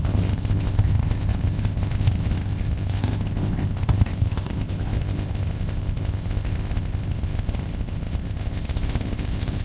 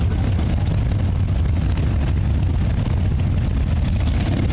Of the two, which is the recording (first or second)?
second